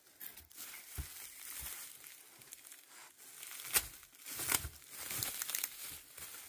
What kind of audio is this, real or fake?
real